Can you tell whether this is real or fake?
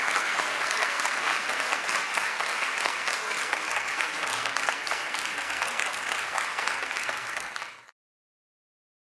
fake